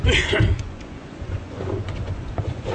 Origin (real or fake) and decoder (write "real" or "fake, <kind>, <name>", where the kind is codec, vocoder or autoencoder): fake, vocoder, Vocos